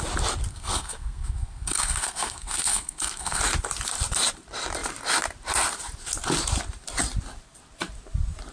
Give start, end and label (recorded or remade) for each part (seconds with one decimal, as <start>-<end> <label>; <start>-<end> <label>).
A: 0.0-0.5 recorded; 0.5-3.4 remade; 3.4-8.5 recorded